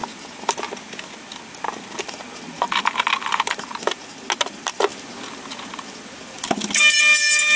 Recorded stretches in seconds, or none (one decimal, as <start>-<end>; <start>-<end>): 0.0-7.6